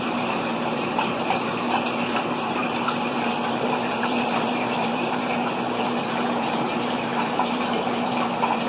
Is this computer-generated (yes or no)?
yes